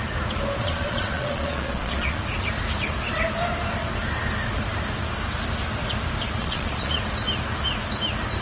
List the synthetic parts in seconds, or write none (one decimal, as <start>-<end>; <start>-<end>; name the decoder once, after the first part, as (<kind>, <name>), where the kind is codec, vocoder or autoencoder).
0.6-2.2 (vocoder, Vocos); 6.4-7.0